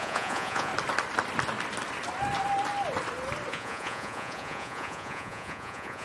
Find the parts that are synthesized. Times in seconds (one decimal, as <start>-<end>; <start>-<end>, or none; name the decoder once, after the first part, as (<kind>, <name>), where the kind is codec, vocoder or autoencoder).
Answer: 0.0-0.7 (vocoder, Vocos); 3.5-6.0